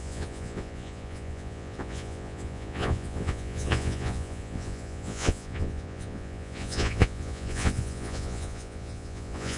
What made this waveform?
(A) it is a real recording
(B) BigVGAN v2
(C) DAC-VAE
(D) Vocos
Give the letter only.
D